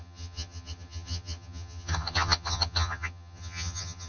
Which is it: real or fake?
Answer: fake